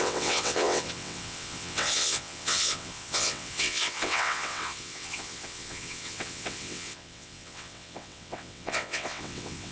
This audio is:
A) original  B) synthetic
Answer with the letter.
B